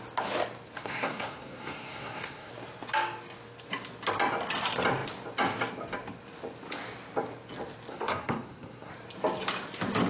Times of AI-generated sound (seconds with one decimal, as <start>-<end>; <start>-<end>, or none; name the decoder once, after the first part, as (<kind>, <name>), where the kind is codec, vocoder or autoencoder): 0.8-2.5 (codec, SNAC); 7.9-8.9